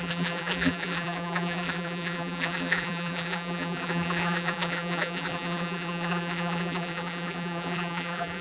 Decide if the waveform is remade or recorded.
remade